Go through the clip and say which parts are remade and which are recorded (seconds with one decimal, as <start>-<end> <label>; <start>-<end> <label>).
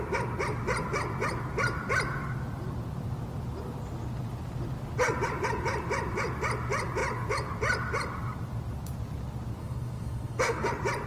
0.0-9.6 recorded; 9.6-10.7 remade; 10.7-11.1 recorded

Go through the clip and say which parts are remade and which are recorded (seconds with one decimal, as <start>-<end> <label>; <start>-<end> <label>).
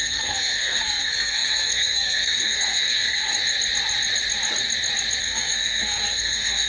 0.0-3.3 remade; 3.3-5.2 recorded; 5.2-6.7 remade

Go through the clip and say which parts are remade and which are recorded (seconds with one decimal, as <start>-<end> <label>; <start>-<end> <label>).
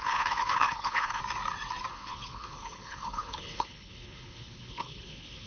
0.0-1.2 remade; 1.2-1.9 recorded; 1.9-5.5 remade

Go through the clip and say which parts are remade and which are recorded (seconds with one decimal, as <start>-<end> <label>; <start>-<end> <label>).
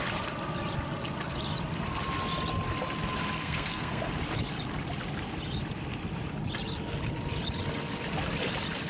0.0-3.4 recorded; 3.4-4.0 remade; 4.0-8.9 recorded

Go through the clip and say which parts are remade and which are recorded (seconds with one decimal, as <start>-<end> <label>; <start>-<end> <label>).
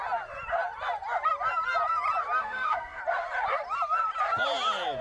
0.0-2.4 recorded; 2.4-3.0 remade; 3.0-5.0 recorded